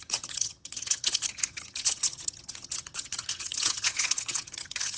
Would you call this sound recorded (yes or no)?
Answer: no